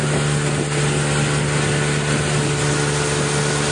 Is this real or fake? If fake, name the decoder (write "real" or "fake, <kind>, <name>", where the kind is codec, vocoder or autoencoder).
real